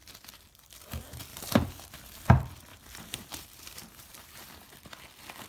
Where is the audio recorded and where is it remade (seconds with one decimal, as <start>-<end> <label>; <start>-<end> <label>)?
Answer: 0.0-1.3 recorded; 1.3-2.0 remade; 2.0-2.7 recorded; 2.7-5.0 remade; 5.0-5.5 recorded